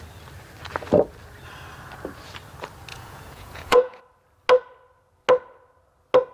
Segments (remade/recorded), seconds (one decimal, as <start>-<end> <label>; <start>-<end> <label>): 0.0-2.9 recorded; 2.9-4.0 remade; 4.0-6.3 recorded